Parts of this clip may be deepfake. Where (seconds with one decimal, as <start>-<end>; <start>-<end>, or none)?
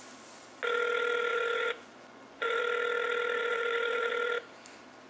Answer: 1.3-2.6; 3.4-4.1